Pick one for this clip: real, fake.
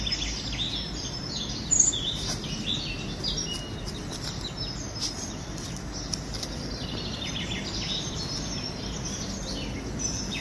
real